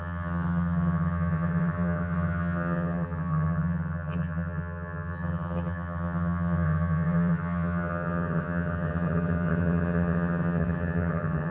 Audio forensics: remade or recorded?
remade